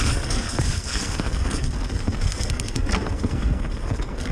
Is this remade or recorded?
remade